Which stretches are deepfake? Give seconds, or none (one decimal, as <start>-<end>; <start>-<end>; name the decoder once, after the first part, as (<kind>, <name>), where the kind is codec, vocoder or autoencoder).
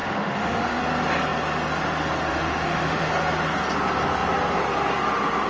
0.0-0.8 (autoencoder, DAC-VAE); 2.3-3.1